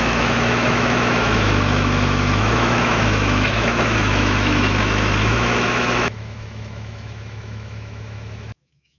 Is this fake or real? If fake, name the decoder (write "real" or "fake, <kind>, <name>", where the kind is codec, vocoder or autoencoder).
fake, autoencoder, DAC-VAE